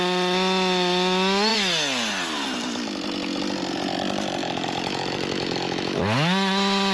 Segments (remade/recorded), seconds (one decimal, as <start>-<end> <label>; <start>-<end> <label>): 0.0-4.4 recorded; 4.4-6.0 remade; 6.0-6.9 recorded